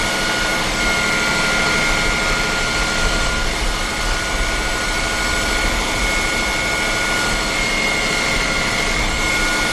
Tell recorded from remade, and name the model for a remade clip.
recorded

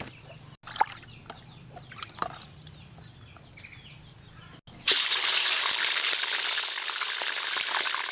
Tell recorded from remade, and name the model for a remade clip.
recorded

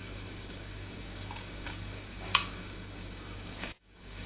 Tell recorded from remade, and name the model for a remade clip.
remade, codec, DAC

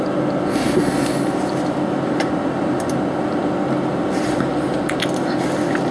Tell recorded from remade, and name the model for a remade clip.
recorded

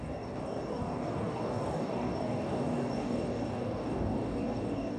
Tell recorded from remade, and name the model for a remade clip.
remade, codec, DAC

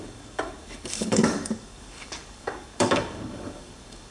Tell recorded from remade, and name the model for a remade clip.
remade, codec, DAC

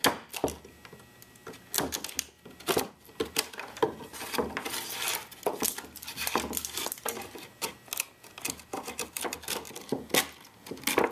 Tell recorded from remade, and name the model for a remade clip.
recorded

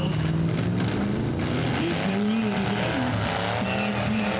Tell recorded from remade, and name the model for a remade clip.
recorded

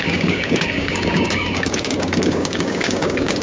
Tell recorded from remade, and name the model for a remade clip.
remade, codec, DAC